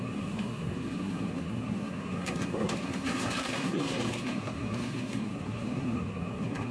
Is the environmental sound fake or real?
fake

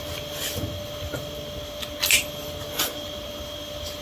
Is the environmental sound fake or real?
real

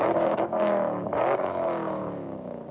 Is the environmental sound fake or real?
fake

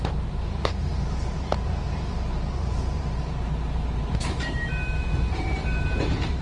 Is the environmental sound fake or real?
fake